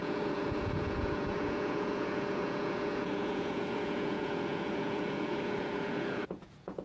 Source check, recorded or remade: remade